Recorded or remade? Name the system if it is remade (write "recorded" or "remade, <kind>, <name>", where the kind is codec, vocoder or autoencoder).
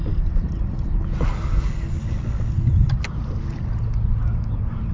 recorded